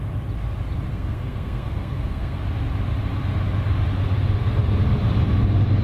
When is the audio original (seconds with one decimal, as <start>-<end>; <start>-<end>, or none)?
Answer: 0.0-0.9; 2.4-5.8

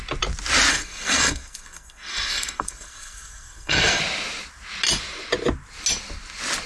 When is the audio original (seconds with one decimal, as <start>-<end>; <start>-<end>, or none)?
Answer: 0.0-0.7; 4.0-6.7